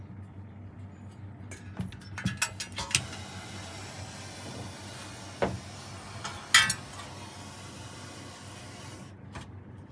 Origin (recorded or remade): recorded